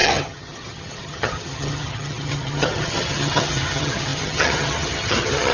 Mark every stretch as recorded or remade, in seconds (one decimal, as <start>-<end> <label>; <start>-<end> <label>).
0.0-5.5 remade